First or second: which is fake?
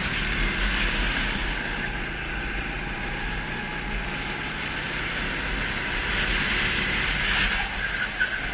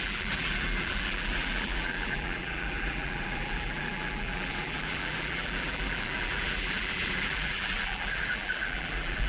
second